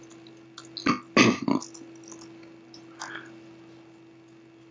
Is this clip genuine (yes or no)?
yes